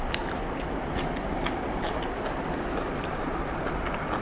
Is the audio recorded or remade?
remade